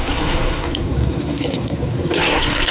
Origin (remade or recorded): remade